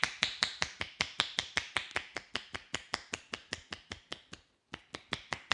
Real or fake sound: real